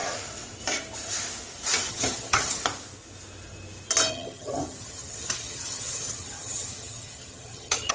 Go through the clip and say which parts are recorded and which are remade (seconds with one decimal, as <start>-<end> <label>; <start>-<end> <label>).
0.0-1.9 recorded; 1.9-2.6 remade; 2.6-4.1 recorded; 4.1-7.9 remade